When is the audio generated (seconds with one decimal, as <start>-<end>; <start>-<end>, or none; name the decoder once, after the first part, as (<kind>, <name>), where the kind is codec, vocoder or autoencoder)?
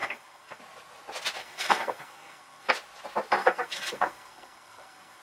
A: 0.0-0.6 (codec, SNAC); 1.4-2.7; 3.4-5.2